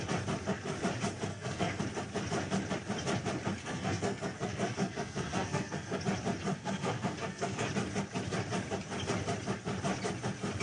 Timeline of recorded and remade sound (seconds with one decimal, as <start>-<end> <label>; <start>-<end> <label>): 0.0-1.3 recorded; 1.3-1.8 remade; 1.8-3.6 recorded; 3.6-6.0 remade; 6.0-6.5 recorded; 6.5-7.7 remade; 7.7-10.6 recorded